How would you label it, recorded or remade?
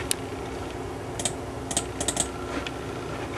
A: recorded